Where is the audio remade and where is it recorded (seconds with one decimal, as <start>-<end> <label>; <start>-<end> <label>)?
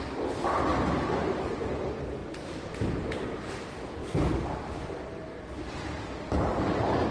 0.0-2.2 recorded; 2.2-3.5 remade; 3.5-4.0 recorded; 4.0-4.7 remade; 4.7-7.1 recorded